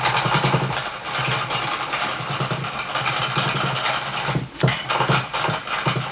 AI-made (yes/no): no